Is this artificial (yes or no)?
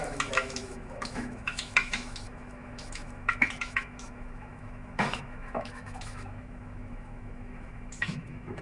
yes